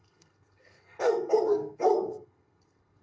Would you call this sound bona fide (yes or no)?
no